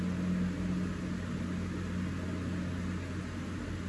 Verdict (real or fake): real